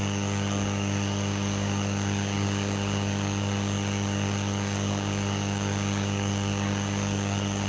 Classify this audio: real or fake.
fake